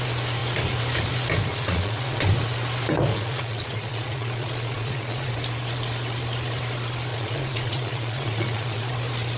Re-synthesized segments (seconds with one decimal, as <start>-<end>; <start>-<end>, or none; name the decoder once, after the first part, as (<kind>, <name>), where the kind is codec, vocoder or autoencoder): 1.5-2.2 (vocoder, Vocos); 3.1-5.3; 7.1-8.9